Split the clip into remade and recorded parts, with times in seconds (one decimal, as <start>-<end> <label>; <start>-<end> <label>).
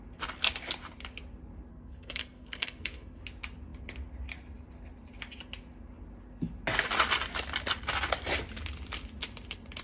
0.0-1.7 recorded; 1.7-3.2 remade; 3.2-9.8 recorded